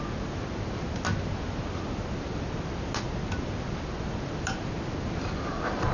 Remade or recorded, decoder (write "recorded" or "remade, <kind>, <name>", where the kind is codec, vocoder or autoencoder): recorded